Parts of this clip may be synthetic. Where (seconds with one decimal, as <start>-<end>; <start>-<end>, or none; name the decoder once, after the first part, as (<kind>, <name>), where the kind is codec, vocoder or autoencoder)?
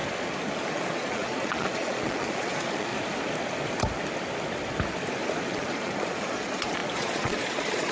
0.6-2.9 (vocoder, Vocos); 5.5-7.9